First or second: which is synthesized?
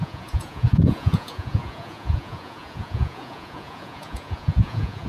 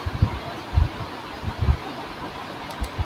first